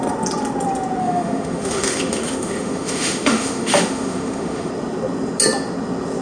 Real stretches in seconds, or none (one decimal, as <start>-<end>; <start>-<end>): 0.0-1.0; 4.7-6.2